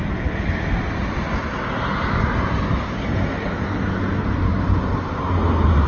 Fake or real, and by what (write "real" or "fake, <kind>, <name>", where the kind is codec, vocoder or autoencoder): real